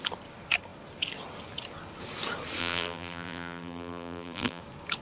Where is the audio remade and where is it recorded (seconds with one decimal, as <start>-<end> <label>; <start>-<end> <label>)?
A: 0.0-2.6 recorded; 2.6-4.6 remade; 4.6-5.0 recorded